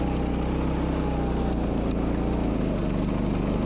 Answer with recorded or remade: recorded